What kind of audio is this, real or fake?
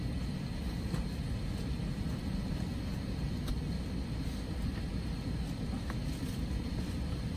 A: real